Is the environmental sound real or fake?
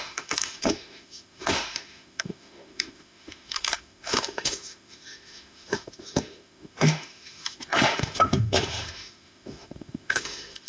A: fake